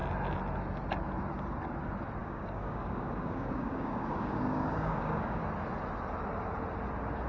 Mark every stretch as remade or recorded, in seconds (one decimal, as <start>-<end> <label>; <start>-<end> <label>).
0.0-2.2 recorded; 2.2-5.4 remade; 5.4-7.3 recorded